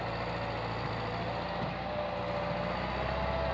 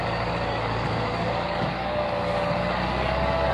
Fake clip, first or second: second